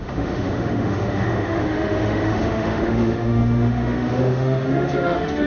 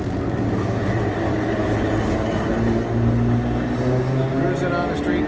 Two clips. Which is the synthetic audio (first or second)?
first